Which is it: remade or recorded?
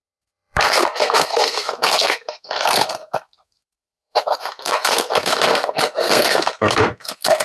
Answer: remade